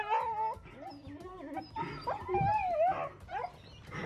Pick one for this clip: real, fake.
real